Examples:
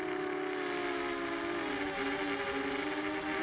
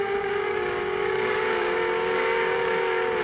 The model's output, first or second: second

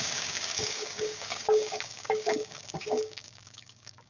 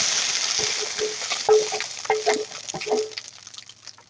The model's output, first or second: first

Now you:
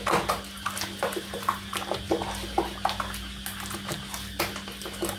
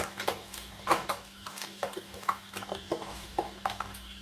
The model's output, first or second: second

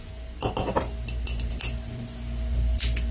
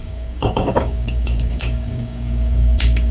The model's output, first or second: second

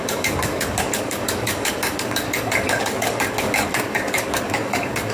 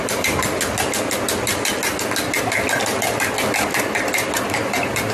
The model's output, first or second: first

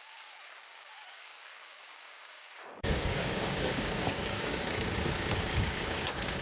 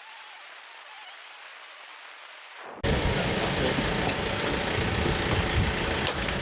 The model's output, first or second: first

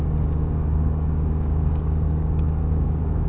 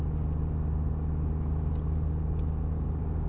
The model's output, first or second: first